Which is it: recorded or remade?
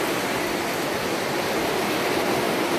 recorded